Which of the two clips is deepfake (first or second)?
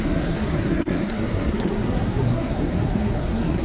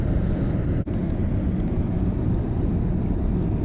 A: first